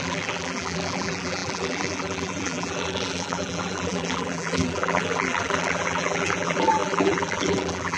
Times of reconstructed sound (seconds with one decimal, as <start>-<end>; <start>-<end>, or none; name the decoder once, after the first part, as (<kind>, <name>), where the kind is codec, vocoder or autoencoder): 0.0-8.0 (vocoder, BigVGAN v2)